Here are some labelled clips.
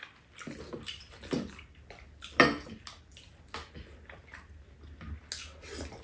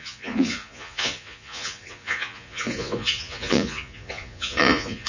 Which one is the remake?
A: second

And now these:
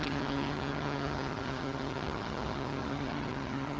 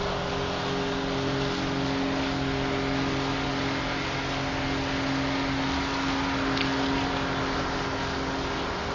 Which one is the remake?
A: first